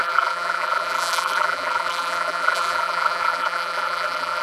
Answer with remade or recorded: remade